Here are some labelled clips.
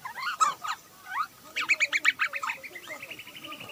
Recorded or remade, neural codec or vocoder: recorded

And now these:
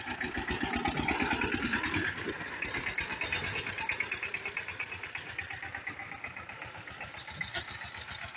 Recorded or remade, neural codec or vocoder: recorded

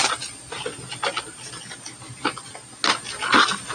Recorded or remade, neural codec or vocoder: recorded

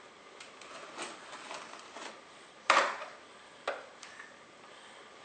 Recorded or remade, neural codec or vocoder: recorded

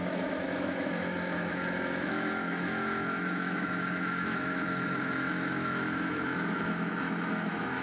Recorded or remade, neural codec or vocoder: remade, autoencoder, DAC-VAE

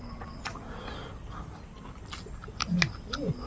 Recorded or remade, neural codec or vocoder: recorded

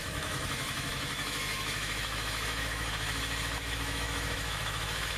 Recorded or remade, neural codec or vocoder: remade, autoencoder, DAC-VAE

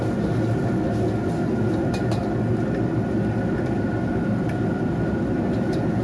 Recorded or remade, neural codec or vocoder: recorded